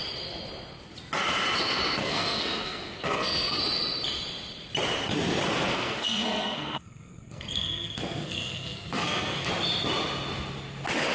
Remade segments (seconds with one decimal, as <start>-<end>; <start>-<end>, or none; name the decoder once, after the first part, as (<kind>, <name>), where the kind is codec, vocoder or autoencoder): 2.0-3.6 (codec, SNAC); 5.7-9.5